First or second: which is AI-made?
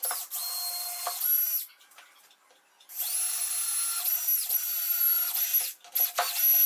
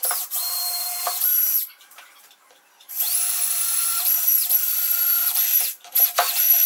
second